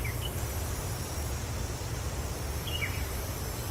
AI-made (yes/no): yes